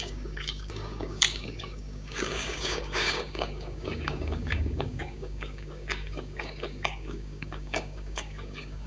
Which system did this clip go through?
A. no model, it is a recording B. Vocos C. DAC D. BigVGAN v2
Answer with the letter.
C